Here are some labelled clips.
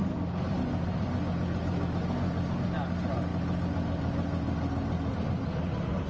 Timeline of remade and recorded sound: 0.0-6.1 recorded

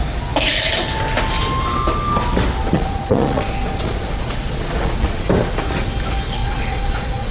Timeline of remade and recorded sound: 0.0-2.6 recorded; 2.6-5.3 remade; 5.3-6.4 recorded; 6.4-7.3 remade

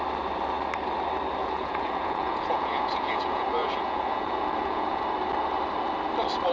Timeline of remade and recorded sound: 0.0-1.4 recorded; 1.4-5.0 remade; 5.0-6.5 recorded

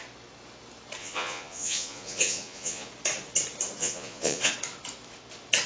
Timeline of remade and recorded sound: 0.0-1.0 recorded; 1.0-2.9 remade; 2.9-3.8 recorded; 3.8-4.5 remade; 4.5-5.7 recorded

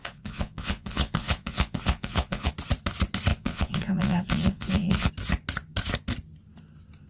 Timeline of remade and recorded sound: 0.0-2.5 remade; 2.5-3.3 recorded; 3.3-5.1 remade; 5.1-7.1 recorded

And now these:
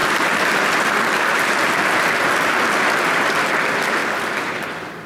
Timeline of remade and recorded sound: 0.0-5.1 recorded